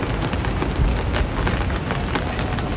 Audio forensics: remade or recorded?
recorded